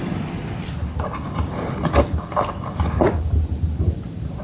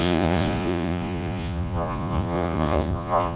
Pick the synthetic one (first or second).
second